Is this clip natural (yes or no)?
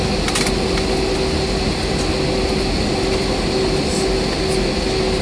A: yes